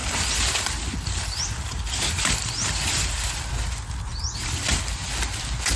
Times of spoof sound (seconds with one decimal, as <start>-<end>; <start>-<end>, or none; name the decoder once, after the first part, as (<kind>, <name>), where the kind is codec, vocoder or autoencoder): 0.0-3.5 (vocoder, BigVGAN v2); 4.1-4.8